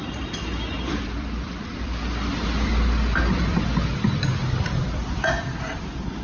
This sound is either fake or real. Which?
fake